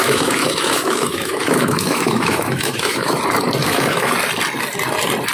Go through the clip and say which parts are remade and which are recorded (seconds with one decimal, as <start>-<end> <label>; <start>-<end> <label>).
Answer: 0.0-3.2 remade; 3.2-3.6 recorded; 3.6-4.1 remade; 4.1-5.3 recorded